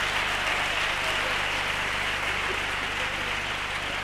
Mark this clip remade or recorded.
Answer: recorded